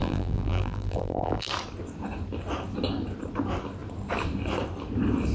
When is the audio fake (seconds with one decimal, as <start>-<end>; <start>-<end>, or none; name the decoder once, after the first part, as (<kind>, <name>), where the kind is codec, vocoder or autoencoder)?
0.0-1.5 (vocoder, BigVGAN v2)